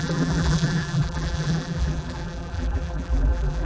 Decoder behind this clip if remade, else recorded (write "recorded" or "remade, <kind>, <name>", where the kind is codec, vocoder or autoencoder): remade, vocoder, BigVGAN v2